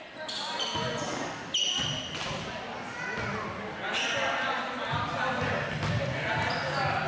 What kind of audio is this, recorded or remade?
recorded